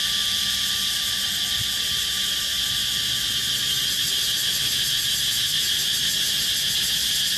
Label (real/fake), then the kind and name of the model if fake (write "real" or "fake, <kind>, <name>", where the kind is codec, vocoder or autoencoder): real